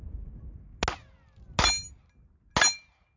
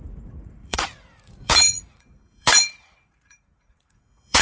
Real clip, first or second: first